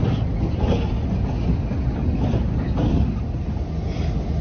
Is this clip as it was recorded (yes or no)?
yes